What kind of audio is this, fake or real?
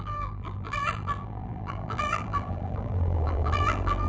fake